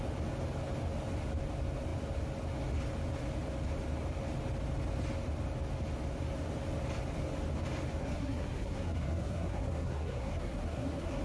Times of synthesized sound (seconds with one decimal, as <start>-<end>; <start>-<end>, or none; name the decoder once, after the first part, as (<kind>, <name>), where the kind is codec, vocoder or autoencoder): 8.0-11.2 (codec, SNAC)